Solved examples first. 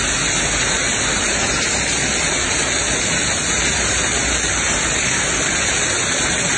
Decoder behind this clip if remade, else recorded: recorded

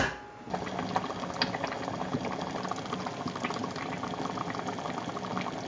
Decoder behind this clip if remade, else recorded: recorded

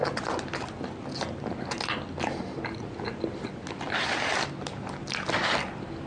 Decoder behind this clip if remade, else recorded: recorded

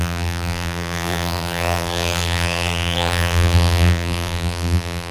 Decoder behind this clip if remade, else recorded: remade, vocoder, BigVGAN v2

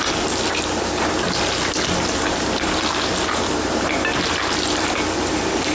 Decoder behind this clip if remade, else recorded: recorded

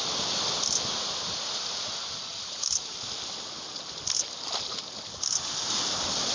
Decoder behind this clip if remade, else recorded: recorded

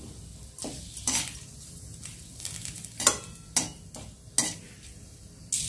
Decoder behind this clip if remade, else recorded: recorded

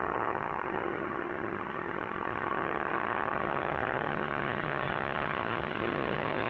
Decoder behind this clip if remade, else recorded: remade, vocoder, HiFi-GAN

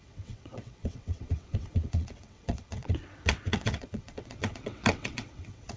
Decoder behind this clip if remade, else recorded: remade, vocoder, WaveNeXt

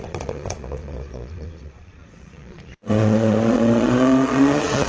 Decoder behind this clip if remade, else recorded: remade, vocoder, Vocos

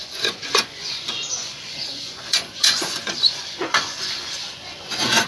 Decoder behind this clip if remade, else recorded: remade, vocoder, Vocos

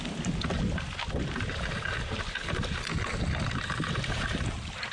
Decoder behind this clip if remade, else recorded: recorded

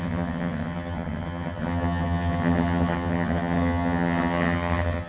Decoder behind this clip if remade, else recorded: remade, vocoder, HiFi-GAN